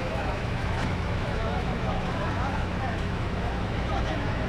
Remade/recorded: remade